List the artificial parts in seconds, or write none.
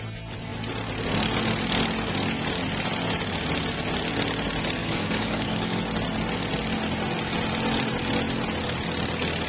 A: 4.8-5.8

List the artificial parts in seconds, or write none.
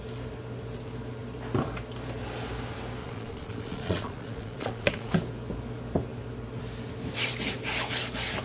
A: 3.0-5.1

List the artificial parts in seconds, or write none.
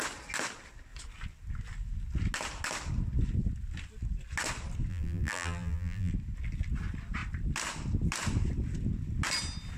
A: 4.9-6.1